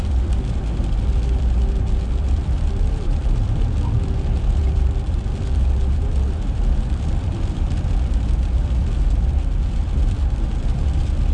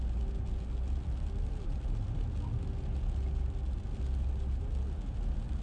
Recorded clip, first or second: second